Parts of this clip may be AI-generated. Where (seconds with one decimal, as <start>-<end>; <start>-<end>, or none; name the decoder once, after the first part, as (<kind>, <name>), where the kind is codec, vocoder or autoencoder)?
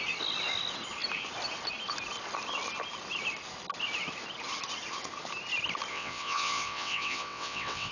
5.9-7.9 (vocoder, WaveNeXt)